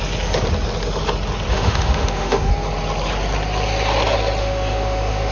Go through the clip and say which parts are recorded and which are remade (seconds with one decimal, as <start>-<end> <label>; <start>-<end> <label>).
0.0-1.5 recorded; 1.5-2.5 remade; 2.5-4.4 recorded; 4.4-5.3 remade